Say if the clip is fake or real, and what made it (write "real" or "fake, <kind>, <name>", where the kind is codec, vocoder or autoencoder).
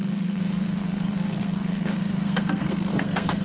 fake, codec, SNAC